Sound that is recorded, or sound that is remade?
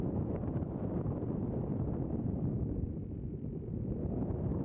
remade